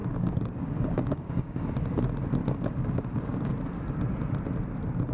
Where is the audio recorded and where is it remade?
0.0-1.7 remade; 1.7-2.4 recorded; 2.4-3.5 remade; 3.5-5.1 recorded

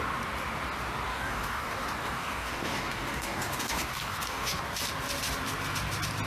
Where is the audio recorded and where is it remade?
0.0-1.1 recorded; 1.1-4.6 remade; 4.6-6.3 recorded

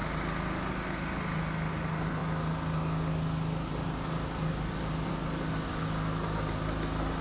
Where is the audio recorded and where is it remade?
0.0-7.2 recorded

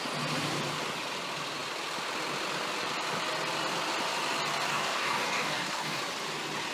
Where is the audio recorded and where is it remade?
0.0-4.7 recorded; 4.7-6.0 remade; 6.0-6.7 recorded

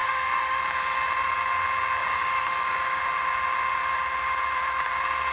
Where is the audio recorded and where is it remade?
0.0-0.6 remade; 0.6-2.0 recorded; 2.0-3.0 remade; 3.0-5.3 recorded